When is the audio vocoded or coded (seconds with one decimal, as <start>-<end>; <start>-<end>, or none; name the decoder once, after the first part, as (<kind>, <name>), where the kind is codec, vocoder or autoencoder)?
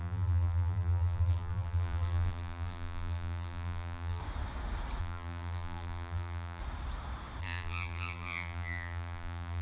0.0-4.2 (vocoder, BigVGAN v2); 5.0-6.6; 7.4-9.6